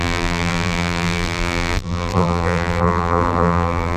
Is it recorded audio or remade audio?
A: remade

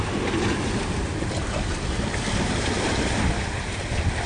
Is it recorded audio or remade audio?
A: recorded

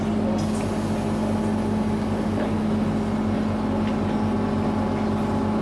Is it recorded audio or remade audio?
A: recorded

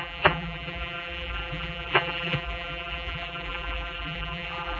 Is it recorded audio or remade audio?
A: remade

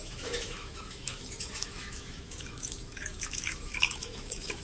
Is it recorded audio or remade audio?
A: remade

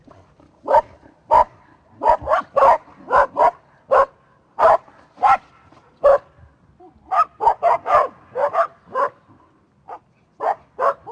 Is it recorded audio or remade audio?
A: recorded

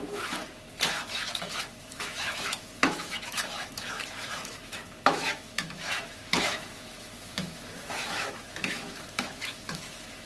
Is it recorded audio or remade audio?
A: remade